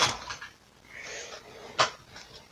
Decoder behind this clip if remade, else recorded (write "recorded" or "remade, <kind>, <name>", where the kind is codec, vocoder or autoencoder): recorded